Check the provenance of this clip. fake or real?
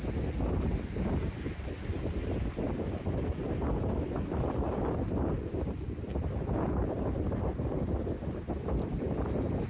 real